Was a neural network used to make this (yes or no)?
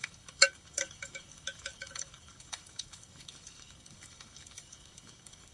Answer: yes